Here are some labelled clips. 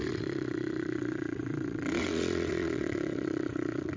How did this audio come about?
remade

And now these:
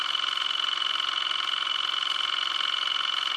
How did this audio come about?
remade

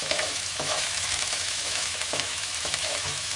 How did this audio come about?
remade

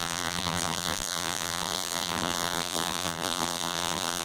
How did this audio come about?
remade